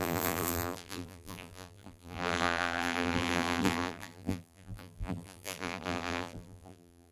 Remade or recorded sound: remade